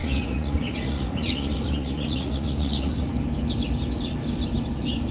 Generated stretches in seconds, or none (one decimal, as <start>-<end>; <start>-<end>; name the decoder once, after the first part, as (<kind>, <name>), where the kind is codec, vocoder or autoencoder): 0.0-3.1 (vocoder, Vocos)